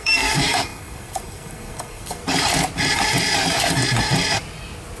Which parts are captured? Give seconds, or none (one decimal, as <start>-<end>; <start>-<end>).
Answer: 2.2-5.0